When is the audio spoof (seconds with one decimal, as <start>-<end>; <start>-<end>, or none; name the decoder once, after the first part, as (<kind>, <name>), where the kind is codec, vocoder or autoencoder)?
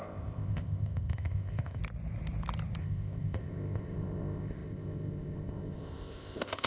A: 0.0-1.8 (codec, ZipCodec); 2.8-6.7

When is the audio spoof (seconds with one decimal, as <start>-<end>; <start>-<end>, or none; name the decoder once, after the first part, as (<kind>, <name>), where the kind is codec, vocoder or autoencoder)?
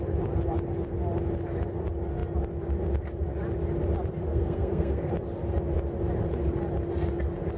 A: 4.3-5.1 (codec, SNAC)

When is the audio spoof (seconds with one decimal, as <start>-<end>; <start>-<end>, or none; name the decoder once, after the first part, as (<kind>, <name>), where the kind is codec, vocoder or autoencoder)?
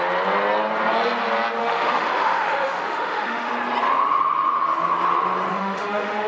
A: 1.6-3.5 (autoencoder, DAC-VAE); 5.5-6.3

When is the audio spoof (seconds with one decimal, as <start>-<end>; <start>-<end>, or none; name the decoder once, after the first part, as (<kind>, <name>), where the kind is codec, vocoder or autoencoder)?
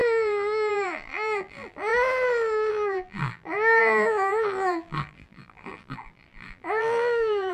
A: 0.0-1.9 (vocoder, BigVGAN v2); 2.7-7.5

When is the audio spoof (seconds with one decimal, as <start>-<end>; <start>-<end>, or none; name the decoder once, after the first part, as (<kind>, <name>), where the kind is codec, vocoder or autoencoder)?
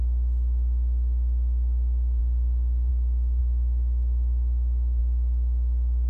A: 3.4-5.0 (autoencoder, DAC-VAE)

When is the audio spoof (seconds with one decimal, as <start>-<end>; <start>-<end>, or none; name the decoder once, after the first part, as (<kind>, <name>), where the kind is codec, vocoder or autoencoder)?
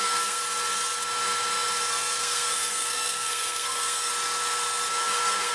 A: 0.0-0.4 (codec, SNAC); 1.9-4.1; 4.9-5.5